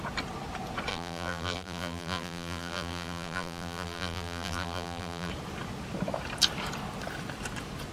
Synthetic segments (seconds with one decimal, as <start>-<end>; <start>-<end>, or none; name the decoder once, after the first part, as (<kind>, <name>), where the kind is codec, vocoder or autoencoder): 0.9-5.3 (vocoder, BigVGAN v2)